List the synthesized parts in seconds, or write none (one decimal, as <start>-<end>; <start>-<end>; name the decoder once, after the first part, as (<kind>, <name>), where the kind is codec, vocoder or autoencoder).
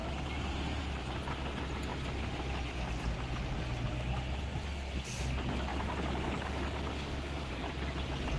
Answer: 5.7-7.7 (codec, DAC)